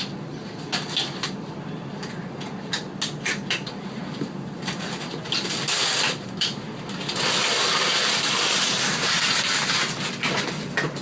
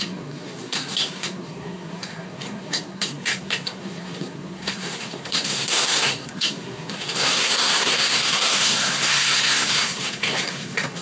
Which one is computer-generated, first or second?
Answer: second